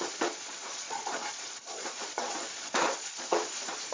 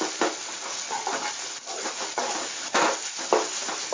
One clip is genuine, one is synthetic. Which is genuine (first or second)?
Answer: second